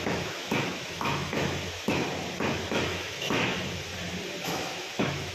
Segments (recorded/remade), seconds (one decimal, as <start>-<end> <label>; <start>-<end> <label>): 0.0-2.0 remade; 2.0-2.7 recorded; 2.7-3.5 remade; 3.5-4.5 recorded; 4.5-5.3 remade